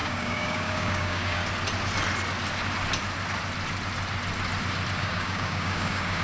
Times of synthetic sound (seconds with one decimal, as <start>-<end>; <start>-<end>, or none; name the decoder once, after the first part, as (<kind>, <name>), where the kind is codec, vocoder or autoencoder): 0.0-1.4 (codec, DAC); 4.9-6.2